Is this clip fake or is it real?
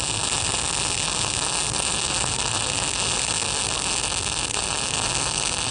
real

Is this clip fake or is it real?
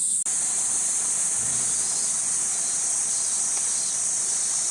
real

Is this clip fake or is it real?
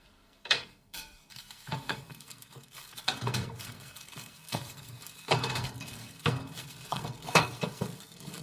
fake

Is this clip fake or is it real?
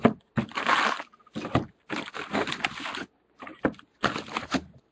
real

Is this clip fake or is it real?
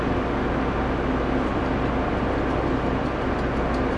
real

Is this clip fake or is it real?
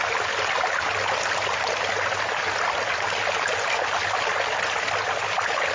real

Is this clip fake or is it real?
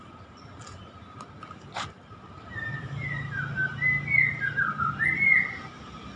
real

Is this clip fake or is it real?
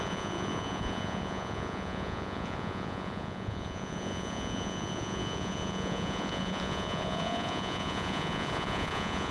fake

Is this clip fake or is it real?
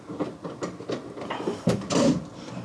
real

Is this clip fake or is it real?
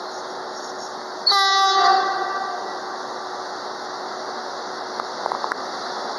real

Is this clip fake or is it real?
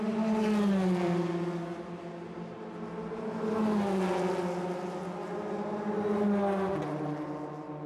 real